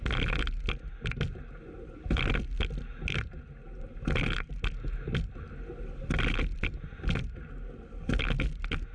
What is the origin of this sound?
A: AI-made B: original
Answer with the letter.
B